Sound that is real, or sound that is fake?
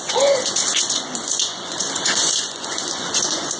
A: fake